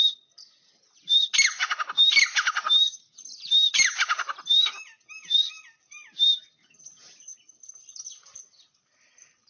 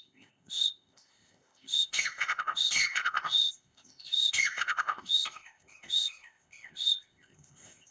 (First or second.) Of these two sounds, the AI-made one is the second